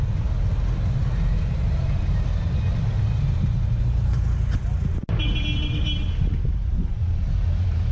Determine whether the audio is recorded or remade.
recorded